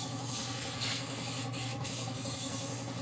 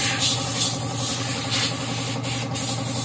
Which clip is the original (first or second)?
second